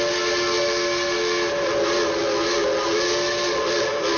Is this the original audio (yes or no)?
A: yes